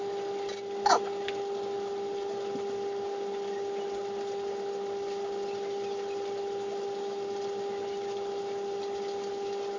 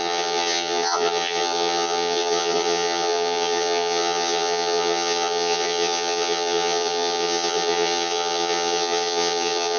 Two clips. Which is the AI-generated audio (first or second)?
second